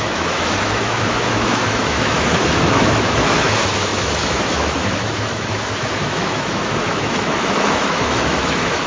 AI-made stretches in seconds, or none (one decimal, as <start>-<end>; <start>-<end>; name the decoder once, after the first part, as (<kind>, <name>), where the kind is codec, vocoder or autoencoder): 0.0-8.9 (autoencoder, DAC-VAE)